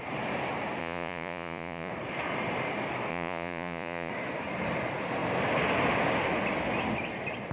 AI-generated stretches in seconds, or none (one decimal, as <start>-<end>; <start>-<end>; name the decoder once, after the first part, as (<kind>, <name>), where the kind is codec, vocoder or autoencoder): 0.8-1.9 (vocoder, Vocos); 3.1-4.1